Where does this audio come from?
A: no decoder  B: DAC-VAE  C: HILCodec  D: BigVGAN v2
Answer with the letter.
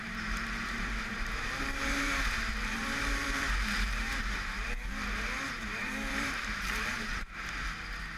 D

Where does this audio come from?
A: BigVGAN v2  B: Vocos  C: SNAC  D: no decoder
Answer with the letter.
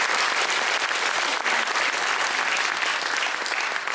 D